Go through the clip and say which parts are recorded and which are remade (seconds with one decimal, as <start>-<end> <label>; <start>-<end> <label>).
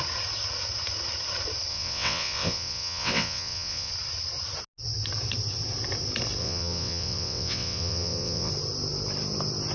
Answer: 0.0-1.7 recorded; 1.7-3.9 remade; 3.9-6.4 recorded; 6.4-8.5 remade; 8.5-9.7 recorded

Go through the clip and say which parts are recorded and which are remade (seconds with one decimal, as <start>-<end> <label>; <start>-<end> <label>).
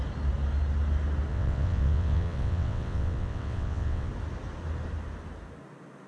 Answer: 0.0-1.3 recorded; 1.3-4.1 remade; 4.1-6.1 recorded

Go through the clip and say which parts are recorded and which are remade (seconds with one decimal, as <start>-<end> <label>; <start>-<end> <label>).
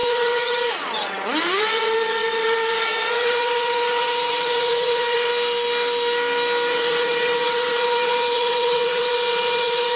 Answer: 0.0-5.3 remade; 5.3-6.7 recorded; 6.7-10.0 remade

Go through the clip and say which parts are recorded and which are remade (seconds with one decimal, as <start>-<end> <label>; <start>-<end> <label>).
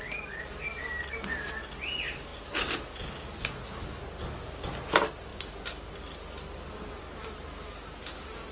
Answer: 0.0-8.5 recorded